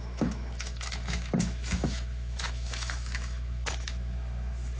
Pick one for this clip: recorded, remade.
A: remade